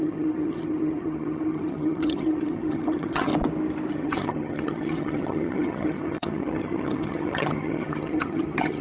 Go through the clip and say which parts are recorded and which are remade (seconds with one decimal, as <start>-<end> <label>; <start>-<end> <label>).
0.0-3.3 remade; 3.3-3.9 recorded; 3.9-8.8 remade